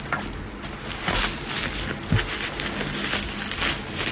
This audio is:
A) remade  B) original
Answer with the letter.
B